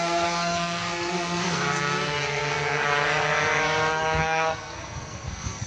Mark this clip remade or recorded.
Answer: remade